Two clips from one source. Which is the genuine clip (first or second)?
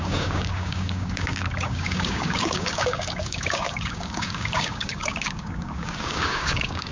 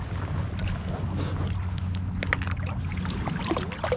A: second